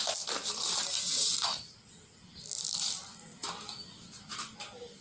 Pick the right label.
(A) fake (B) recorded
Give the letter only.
B